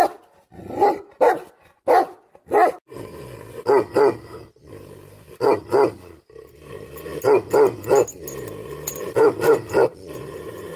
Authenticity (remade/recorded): recorded